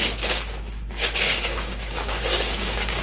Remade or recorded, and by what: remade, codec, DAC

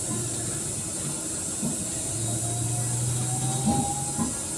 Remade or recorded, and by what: recorded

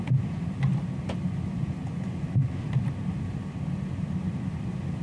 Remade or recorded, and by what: remade, vocoder, BigVGAN v2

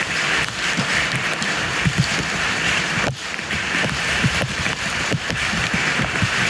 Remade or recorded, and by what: remade, vocoder, BigVGAN v2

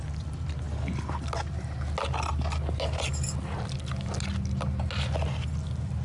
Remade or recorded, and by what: recorded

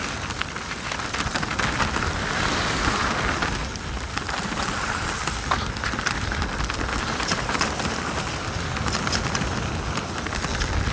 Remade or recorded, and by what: recorded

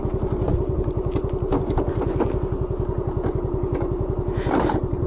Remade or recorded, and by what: recorded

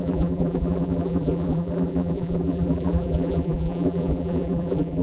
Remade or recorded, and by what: remade, vocoder, BigVGAN v2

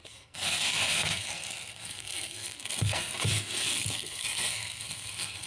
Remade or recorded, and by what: remade, codec, SNAC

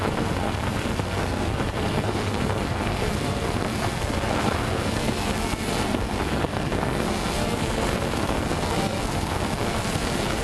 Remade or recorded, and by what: remade, codec, SNAC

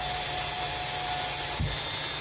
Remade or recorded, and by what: recorded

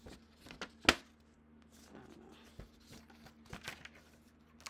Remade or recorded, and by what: recorded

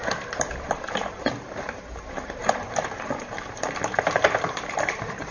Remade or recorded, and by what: remade, vocoder, BigVGAN v2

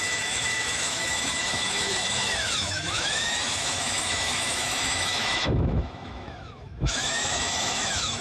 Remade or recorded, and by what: remade, autoencoder, DAC-VAE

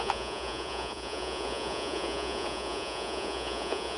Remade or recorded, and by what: remade, vocoder, Vocos